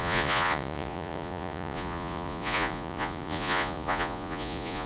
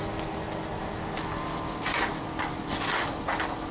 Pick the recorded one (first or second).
second